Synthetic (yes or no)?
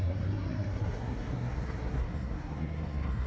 yes